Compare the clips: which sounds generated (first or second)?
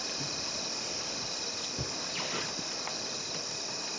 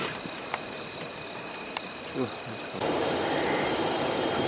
second